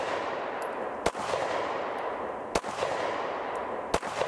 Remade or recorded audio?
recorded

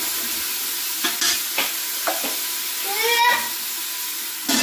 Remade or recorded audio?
recorded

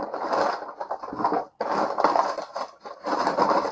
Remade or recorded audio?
remade